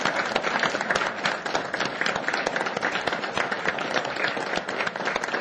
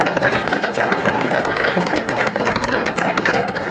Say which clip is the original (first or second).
first